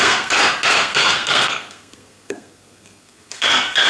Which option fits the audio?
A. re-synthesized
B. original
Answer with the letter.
A